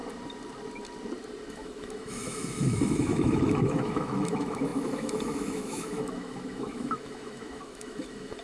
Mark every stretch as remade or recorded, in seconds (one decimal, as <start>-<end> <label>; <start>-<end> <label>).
0.0-1.5 recorded; 1.5-8.4 remade